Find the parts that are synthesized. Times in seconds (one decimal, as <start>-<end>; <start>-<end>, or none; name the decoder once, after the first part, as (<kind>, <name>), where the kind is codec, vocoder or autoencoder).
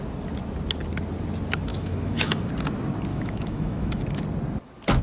1.7-2.5 (autoencoder, DAC-VAE); 3.1-4.0